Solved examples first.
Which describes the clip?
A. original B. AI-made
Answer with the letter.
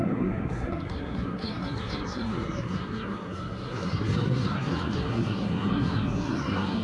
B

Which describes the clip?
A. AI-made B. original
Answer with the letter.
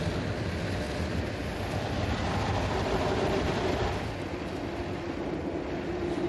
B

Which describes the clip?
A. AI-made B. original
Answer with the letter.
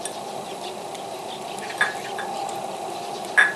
B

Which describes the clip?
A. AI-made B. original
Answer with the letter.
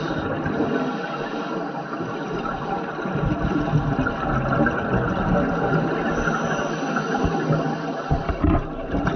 B